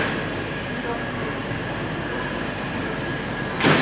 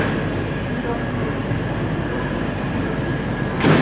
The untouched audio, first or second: first